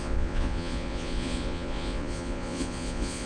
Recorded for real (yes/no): no